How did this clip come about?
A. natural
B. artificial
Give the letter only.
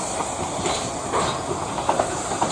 A